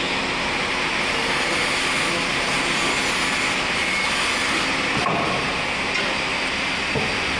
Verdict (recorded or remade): recorded